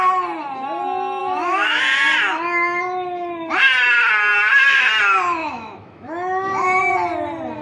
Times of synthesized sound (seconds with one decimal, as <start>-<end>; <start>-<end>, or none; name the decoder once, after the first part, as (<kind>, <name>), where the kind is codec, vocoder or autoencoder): 1.2-1.8 (autoencoder, DAC-VAE); 5.4-6.9